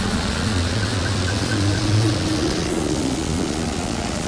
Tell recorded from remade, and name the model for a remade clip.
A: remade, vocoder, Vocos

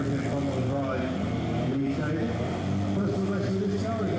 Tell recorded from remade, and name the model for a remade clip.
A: recorded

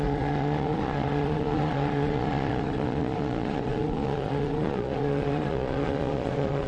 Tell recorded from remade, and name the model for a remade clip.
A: remade, vocoder, Vocos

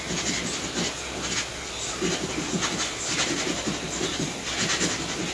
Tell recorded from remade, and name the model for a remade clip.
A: recorded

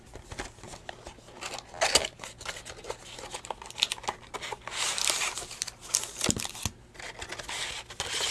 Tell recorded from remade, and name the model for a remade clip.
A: recorded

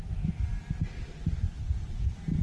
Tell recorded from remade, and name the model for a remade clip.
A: recorded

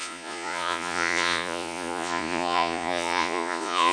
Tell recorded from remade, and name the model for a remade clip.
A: remade, vocoder, Vocos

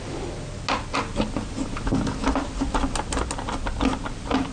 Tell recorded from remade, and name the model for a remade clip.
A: recorded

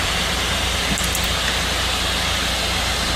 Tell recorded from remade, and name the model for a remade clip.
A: recorded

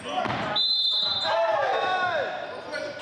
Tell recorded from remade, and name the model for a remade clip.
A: recorded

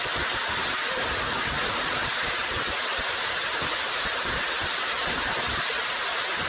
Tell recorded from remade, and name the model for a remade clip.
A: recorded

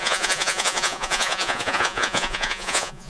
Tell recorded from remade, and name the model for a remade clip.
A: remade, vocoder, Vocos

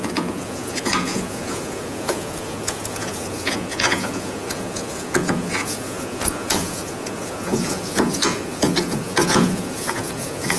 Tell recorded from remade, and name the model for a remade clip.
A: remade, vocoder, Vocos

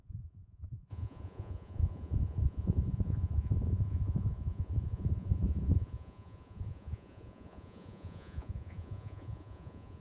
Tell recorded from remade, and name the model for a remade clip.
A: remade, vocoder, Vocos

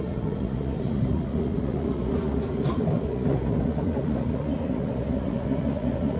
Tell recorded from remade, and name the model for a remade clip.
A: remade, vocoder, Vocos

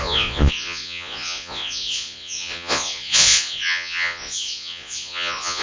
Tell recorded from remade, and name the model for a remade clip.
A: remade, vocoder, Vocos